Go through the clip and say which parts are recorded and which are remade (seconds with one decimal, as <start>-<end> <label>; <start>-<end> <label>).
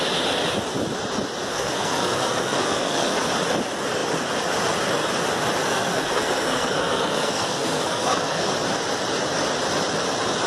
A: 0.0-1.5 recorded; 1.5-3.2 remade; 3.2-5.6 recorded; 5.6-8.5 remade; 8.5-10.5 recorded